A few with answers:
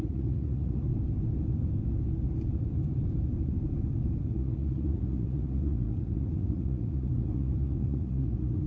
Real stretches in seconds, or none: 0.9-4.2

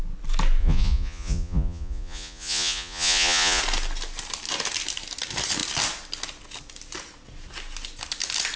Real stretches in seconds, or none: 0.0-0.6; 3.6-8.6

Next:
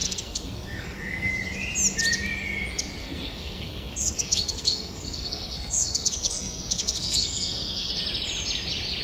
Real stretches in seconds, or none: 1.3-3.0; 7.9-9.0